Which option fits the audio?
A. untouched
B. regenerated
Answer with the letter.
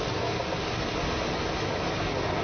A